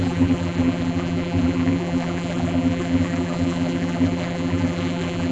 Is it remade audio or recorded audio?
remade